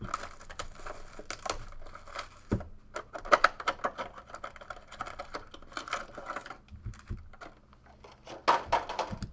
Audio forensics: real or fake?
real